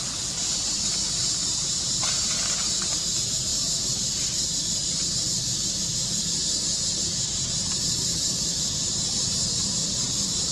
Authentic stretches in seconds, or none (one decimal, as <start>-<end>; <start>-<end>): 6.4-7.7

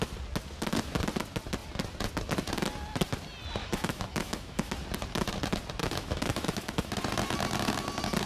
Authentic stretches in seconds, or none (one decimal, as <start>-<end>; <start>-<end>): 0.0-3.6; 4.7-5.8; 6.9-8.3

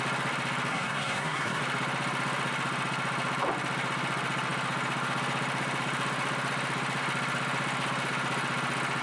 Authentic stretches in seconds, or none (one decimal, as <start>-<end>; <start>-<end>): 0.0-0.7; 1.6-9.0

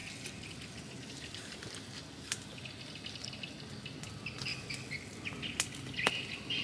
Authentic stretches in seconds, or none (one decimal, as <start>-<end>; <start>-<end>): 0.0-6.6

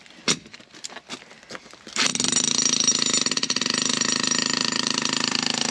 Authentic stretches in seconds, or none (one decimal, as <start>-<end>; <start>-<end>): 0.0-4.4; 5.0-5.7

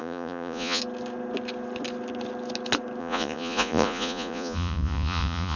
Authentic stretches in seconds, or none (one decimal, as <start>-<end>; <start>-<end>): 0.8-3.0

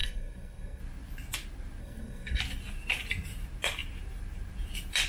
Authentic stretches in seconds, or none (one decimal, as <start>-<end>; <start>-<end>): 0.8-1.8; 2.4-5.1

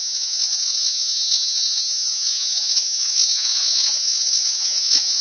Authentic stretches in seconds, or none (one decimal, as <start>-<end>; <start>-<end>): none